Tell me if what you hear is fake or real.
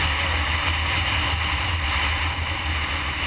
real